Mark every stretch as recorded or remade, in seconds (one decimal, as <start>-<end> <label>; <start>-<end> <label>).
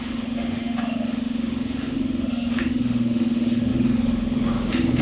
0.0-5.0 remade